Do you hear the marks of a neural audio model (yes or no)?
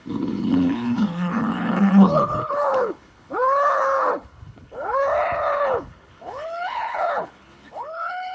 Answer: yes